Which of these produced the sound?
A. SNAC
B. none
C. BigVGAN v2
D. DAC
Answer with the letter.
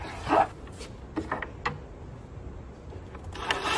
B